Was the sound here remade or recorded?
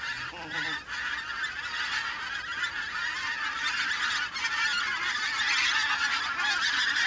recorded